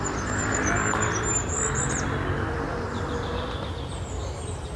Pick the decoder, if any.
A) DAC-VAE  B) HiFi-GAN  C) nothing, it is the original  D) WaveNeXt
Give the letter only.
C